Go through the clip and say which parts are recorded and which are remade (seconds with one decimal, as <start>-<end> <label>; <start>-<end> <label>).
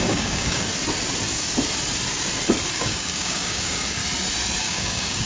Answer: 0.0-0.7 remade; 0.7-2.7 recorded; 2.7-4.0 remade; 4.0-4.6 recorded; 4.6-5.3 remade